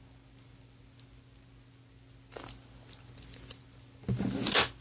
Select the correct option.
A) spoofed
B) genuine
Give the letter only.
B